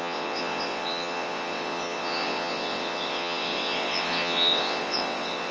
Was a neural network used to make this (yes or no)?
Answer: yes